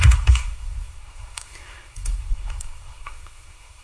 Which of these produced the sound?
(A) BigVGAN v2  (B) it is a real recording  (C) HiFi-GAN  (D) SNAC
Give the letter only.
D